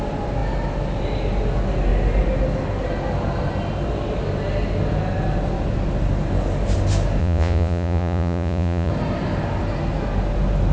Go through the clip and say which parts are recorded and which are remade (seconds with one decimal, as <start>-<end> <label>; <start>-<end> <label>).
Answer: 0.0-7.2 recorded; 7.2-8.9 remade; 8.9-10.7 recorded